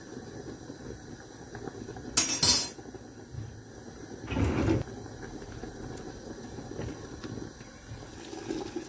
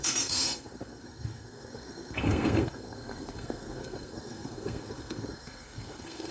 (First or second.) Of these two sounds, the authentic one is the first